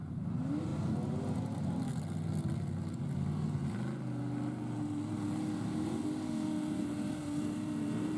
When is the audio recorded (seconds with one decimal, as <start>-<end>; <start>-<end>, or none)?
0.7-1.4; 1.9-6.8